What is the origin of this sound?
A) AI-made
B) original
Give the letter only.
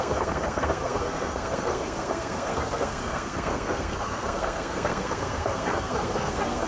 A